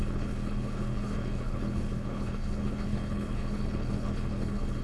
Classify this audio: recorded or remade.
remade